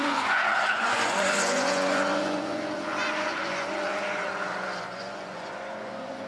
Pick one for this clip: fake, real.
fake